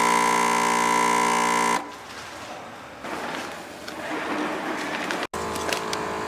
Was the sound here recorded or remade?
recorded